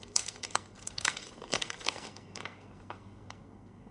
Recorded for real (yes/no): no